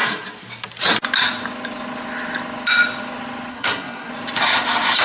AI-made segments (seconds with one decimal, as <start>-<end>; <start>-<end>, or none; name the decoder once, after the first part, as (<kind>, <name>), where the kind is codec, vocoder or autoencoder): 3.5-4.1 (codec, SNAC)